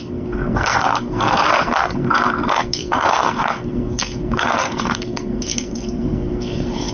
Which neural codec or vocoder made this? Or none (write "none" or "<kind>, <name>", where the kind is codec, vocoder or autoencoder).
codec, SNAC